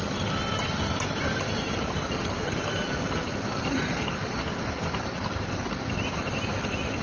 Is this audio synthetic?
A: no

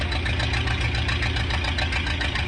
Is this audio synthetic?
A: no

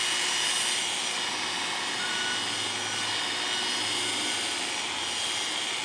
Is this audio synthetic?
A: no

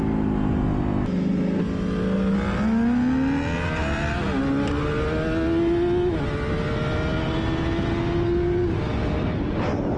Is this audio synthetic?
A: no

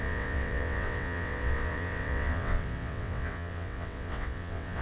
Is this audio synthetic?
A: yes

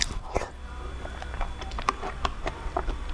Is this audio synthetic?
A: no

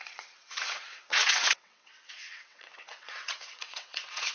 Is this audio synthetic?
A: yes